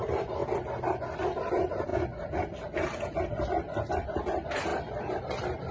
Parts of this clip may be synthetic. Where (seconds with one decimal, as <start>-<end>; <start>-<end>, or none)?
0.0-0.4; 1.5-1.9; 3.3-5.7